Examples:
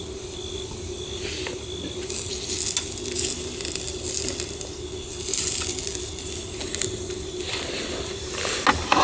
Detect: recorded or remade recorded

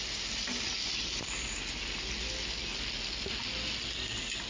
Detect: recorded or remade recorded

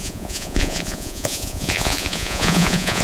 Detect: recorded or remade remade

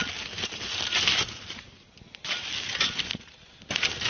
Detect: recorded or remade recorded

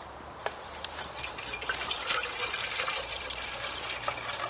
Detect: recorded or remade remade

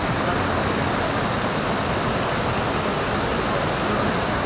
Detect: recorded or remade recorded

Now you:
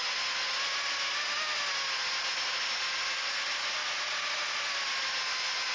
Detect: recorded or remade recorded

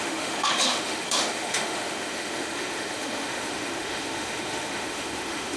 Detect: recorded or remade remade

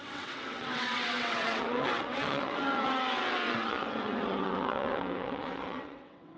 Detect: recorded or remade remade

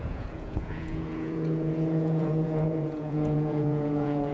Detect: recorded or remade remade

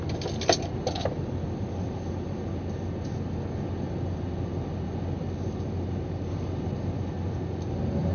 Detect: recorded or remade recorded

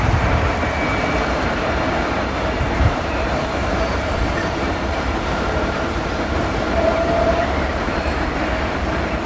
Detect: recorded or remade remade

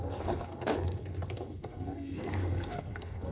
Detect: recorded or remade remade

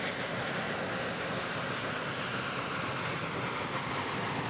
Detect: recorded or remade recorded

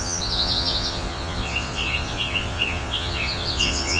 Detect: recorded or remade remade